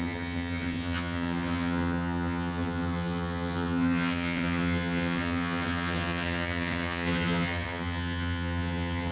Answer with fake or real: fake